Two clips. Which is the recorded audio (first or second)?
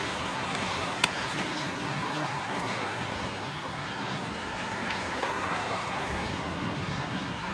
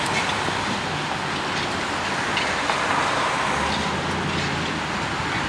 second